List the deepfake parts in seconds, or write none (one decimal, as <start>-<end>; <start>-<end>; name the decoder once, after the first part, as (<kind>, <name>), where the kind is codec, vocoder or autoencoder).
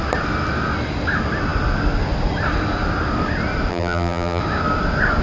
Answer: 3.7-4.4 (vocoder, BigVGAN v2)